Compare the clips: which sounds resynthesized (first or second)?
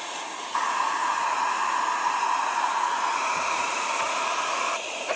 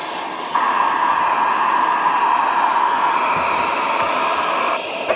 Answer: first